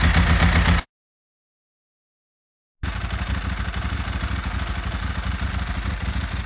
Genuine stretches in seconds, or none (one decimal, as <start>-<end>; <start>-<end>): 0.0-6.5